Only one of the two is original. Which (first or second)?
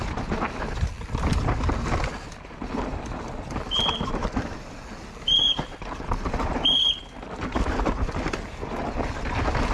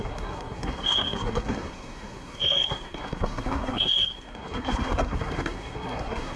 first